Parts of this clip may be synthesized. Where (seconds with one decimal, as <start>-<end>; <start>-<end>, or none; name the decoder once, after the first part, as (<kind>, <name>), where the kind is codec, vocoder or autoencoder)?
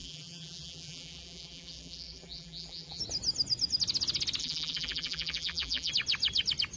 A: 0.0-3.0 (vocoder, BigVGAN v2); 4.4-5.9